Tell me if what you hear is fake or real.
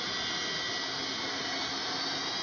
real